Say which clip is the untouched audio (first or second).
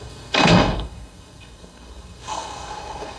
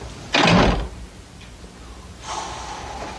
second